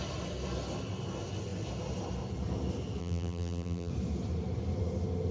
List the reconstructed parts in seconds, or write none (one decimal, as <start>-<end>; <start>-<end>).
3.0-3.9